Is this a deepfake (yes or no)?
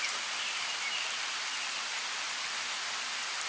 no